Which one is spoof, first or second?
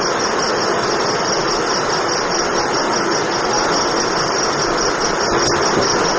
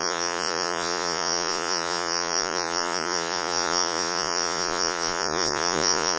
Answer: second